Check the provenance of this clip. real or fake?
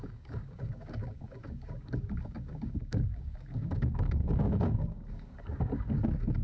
fake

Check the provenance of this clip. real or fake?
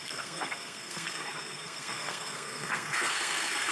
fake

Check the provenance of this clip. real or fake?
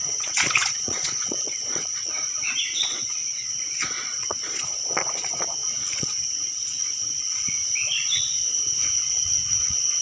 fake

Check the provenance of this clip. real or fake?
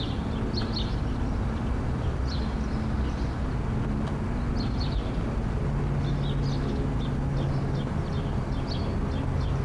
real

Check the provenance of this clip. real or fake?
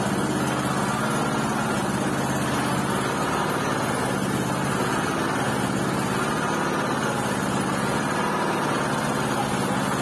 real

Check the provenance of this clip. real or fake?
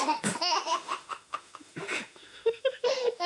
fake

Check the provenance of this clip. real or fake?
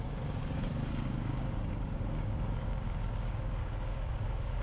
fake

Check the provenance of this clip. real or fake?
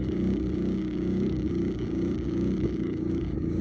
fake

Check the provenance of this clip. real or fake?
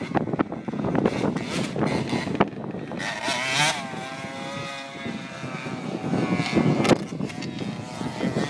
real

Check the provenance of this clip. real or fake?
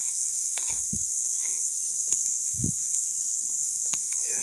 fake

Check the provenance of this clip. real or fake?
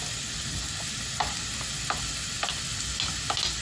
real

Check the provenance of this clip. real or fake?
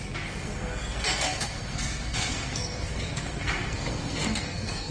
fake